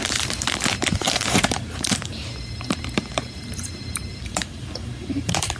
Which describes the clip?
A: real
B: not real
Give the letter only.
B